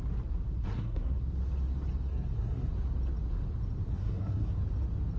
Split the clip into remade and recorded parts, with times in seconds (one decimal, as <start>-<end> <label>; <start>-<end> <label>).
0.0-0.6 recorded; 0.6-1.2 remade; 1.2-2.1 recorded; 2.1-2.7 remade; 2.7-3.9 recorded; 3.9-4.5 remade; 4.5-5.2 recorded